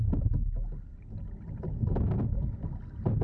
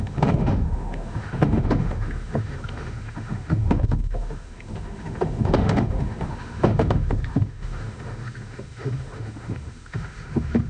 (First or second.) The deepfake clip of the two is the second